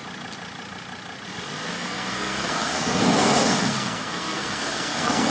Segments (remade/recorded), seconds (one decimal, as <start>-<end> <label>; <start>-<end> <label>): 0.0-1.7 recorded; 1.7-5.3 remade